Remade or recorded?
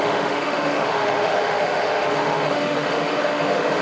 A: remade